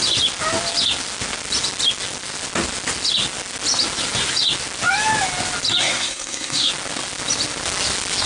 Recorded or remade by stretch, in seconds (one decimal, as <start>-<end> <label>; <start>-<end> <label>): 0.0-5.8 recorded; 5.8-6.7 remade; 6.7-8.3 recorded